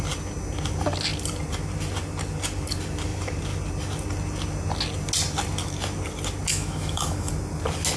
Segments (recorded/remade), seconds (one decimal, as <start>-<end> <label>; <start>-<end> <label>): 0.0-6.5 recorded; 6.5-7.3 remade; 7.3-8.0 recorded